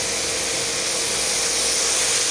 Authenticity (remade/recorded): recorded